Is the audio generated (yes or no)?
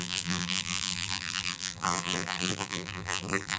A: yes